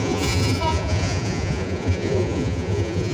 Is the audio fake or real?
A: fake